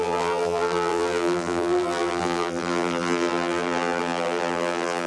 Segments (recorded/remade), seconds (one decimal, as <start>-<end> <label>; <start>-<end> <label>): 0.0-5.1 remade